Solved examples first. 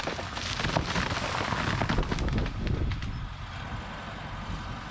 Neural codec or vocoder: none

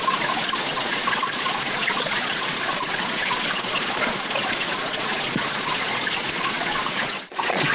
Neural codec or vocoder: vocoder, Vocos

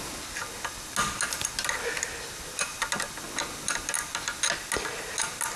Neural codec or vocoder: none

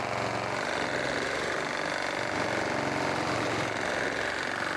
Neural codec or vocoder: none